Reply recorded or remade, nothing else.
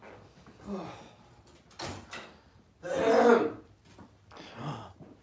recorded